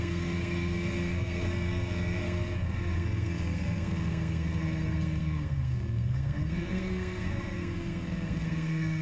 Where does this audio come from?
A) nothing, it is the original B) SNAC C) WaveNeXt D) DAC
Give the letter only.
B